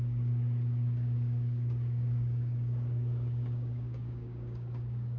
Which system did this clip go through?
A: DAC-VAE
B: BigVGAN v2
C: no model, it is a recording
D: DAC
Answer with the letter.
D